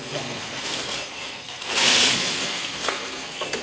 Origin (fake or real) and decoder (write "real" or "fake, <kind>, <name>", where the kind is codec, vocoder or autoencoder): fake, codec, SNAC